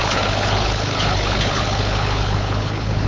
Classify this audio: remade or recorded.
remade